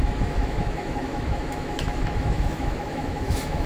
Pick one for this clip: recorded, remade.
remade